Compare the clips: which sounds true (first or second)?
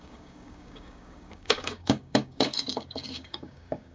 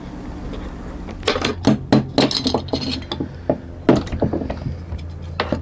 second